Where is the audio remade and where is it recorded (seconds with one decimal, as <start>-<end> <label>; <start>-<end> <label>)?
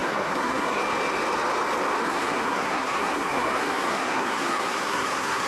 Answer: 0.0-0.8 remade; 0.8-2.0 recorded; 2.0-5.5 remade